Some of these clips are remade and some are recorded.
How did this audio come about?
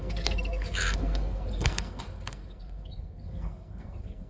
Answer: remade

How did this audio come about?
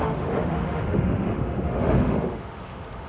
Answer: remade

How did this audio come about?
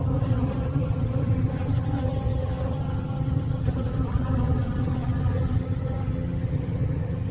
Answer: remade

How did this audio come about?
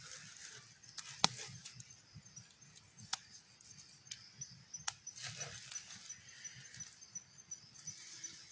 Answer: recorded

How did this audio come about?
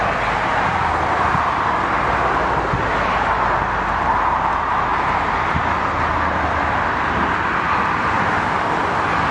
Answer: recorded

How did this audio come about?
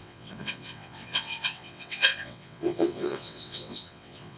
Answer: remade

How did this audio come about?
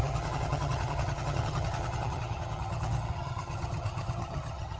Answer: remade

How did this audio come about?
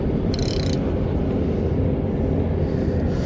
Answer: recorded